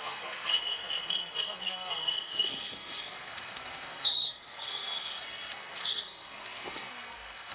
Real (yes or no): no